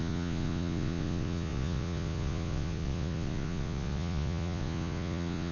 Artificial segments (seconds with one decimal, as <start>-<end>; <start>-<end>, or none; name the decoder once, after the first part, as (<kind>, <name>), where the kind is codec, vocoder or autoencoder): 0.0-5.5 (vocoder, Vocos)